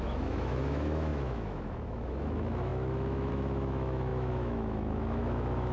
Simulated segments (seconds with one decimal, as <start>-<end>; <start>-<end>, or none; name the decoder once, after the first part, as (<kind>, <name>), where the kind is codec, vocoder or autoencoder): 0.0-5.7 (autoencoder, DAC-VAE)